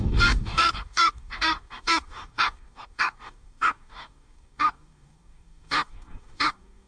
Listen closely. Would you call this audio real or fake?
fake